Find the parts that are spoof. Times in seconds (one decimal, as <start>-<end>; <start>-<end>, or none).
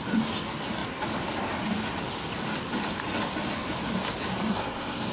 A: 4.5-5.1